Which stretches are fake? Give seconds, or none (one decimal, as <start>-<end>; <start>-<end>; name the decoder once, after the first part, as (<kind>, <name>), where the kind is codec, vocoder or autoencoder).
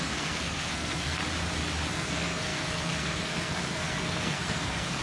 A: 0.0-1.2 (codec, SNAC); 1.9-5.0